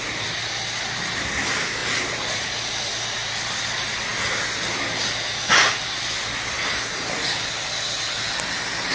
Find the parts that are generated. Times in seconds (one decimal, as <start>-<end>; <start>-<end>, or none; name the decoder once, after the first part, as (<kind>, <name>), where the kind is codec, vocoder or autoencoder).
1.8-3.5 (vocoder, BigVGAN v2)